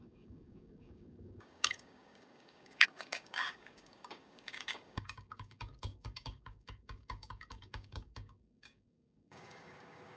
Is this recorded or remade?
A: remade